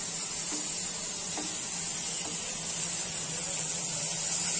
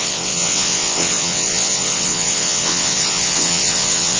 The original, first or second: first